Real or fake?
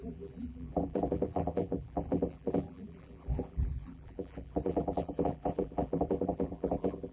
fake